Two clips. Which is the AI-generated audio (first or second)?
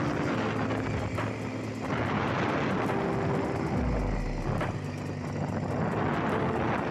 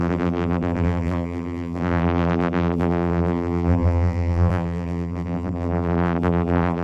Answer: second